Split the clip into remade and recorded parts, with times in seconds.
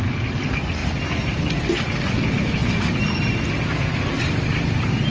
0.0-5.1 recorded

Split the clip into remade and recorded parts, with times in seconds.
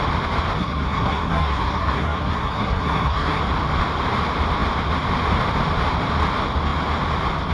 0.0-0.6 recorded; 0.6-3.4 remade; 3.4-7.5 recorded